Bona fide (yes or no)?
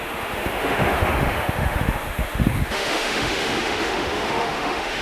no